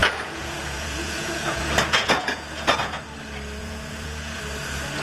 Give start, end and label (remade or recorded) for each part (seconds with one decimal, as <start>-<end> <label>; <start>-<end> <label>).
0.0-3.0 remade; 3.0-3.6 recorded; 3.6-4.4 remade; 4.4-5.0 recorded